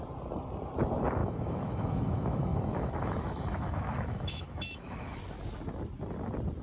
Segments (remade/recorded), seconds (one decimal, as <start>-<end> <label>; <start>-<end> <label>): 0.0-1.2 recorded; 1.2-5.2 remade; 5.2-6.6 recorded